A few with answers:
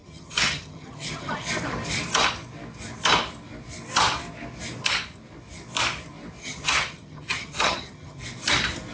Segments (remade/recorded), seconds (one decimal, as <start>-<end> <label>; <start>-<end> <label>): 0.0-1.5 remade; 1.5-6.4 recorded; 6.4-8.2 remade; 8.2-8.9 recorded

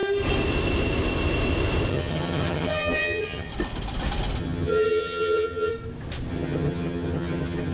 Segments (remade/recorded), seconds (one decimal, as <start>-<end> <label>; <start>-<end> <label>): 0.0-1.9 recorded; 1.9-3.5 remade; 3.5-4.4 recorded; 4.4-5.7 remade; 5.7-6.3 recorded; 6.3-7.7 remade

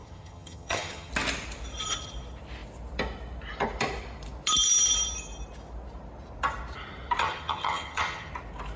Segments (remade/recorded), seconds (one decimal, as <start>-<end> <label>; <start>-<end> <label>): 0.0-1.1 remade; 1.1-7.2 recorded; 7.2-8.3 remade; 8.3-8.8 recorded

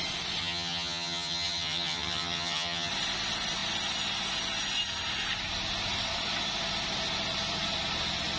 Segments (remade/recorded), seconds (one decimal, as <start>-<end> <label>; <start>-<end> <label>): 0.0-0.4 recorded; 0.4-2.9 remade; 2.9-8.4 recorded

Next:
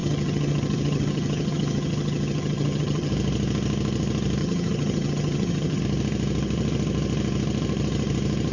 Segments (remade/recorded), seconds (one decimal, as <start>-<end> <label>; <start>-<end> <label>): 0.0-3.1 remade; 3.1-4.4 recorded; 4.4-5.8 remade; 5.8-8.5 recorded

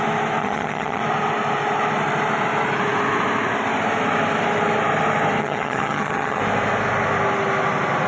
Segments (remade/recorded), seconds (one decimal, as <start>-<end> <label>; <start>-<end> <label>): 0.0-0.4 recorded; 0.4-1.0 remade; 1.0-5.4 recorded; 5.4-6.4 remade; 6.4-8.1 recorded

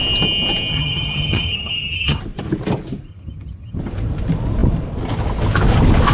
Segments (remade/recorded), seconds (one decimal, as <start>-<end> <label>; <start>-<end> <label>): 0.0-0.7 recorded; 0.7-2.2 remade; 2.2-3.1 recorded; 3.1-3.8 remade; 3.8-6.1 recorded